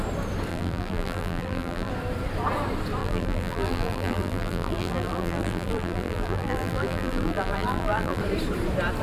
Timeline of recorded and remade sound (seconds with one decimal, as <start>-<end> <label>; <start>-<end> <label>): 0.0-0.5 recorded; 0.5-1.9 remade; 1.9-3.0 recorded; 3.0-8.2 remade; 8.2-9.0 recorded